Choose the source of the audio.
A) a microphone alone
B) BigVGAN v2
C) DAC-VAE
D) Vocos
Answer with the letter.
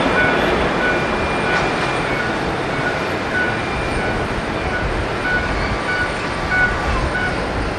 A